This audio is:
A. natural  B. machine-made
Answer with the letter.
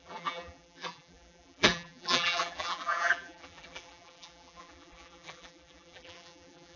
B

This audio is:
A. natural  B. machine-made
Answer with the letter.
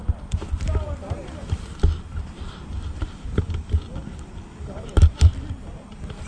A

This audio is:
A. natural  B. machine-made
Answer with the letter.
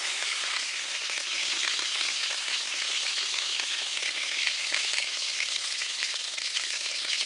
B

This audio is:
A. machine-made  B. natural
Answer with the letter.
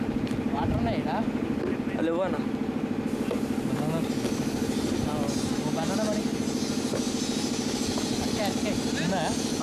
B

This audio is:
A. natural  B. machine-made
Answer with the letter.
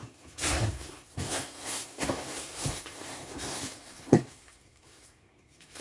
B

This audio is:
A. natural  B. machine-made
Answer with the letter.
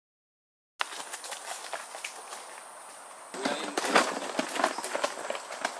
A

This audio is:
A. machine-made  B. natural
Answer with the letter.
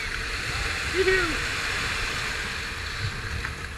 B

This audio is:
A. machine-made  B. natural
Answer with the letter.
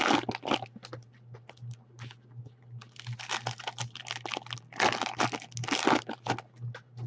B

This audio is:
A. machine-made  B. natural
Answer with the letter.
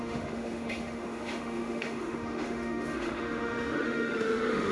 A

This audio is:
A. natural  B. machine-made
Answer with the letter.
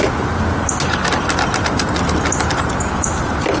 A